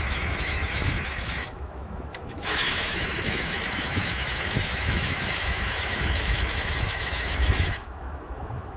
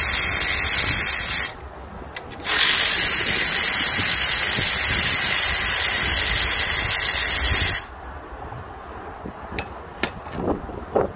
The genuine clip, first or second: second